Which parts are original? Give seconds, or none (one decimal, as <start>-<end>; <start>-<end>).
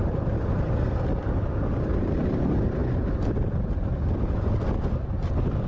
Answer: 2.8-3.5